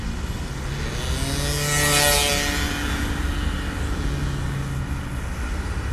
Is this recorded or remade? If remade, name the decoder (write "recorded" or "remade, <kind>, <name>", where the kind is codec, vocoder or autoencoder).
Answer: recorded